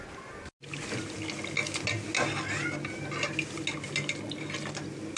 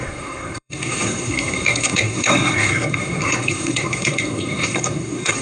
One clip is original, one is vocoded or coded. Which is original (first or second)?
first